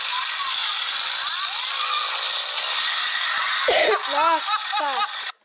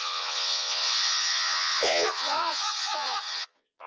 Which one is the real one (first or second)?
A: first